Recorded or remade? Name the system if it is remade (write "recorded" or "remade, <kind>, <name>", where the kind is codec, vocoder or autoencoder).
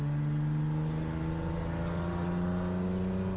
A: recorded